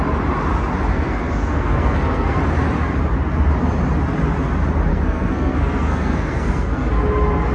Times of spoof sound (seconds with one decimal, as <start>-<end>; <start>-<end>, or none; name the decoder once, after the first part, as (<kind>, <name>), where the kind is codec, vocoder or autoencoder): 0.9-2.4 (codec, SNAC); 4.9-6.9